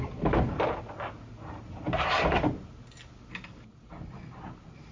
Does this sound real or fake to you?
real